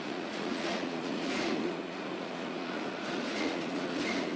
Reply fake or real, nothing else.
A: fake